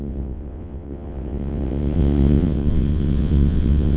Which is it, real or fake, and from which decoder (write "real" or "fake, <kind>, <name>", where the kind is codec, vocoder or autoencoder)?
fake, vocoder, WaveNeXt